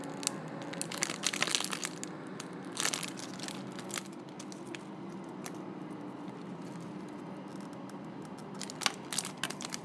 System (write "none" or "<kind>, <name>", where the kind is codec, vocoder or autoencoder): none